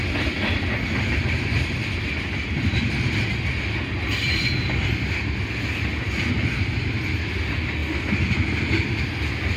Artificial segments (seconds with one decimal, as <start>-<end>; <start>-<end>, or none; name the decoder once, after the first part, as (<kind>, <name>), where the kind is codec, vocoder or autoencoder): none